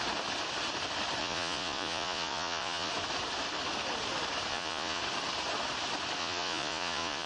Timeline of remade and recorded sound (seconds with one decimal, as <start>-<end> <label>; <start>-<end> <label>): 0.0-1.2 recorded; 1.2-2.9 remade; 2.9-4.5 recorded; 4.5-5.0 remade; 5.0-6.2 recorded; 6.2-7.3 remade